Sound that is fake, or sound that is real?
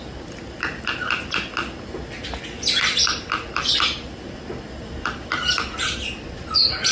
real